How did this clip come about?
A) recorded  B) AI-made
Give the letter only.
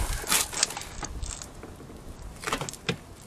A